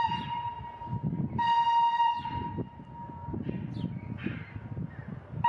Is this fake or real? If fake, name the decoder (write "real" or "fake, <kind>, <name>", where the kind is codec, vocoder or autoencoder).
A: real